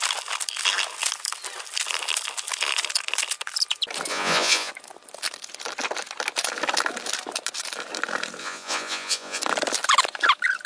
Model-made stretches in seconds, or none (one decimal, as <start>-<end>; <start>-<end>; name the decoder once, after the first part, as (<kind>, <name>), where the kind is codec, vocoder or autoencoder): 4.1-4.7 (vocoder, Vocos); 8.4-9.4